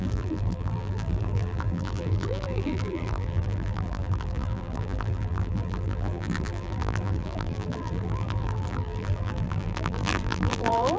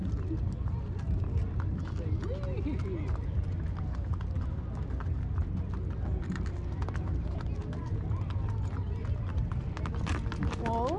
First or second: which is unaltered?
second